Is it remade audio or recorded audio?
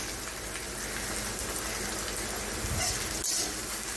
recorded